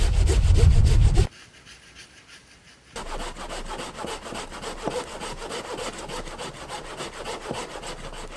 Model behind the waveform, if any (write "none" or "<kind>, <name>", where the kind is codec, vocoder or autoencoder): none